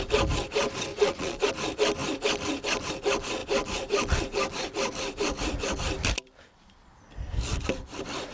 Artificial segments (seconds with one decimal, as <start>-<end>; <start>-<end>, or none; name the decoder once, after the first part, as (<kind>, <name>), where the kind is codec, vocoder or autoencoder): 0.9-1.5 (vocoder, Vocos)